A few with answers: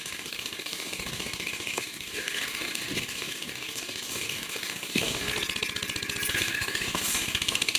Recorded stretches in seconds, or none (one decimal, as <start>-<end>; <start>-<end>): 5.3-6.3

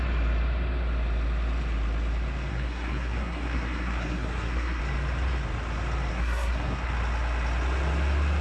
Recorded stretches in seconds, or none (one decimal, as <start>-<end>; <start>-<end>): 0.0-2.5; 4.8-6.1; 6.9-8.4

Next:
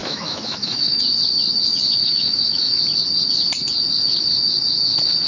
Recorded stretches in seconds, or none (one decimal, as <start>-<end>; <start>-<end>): 1.0-2.0; 2.8-5.3

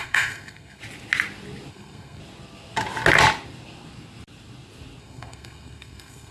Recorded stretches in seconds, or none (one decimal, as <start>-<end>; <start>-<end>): 0.8-1.7; 2.2-5.0

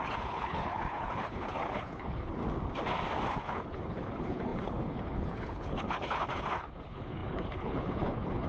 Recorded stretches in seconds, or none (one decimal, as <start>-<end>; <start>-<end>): 2.4-3.3